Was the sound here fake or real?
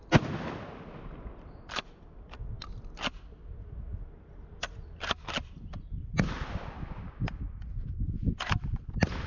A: real